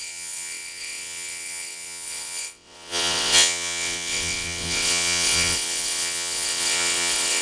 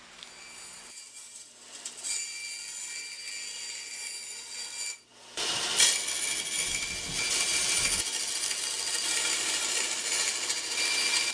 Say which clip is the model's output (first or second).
first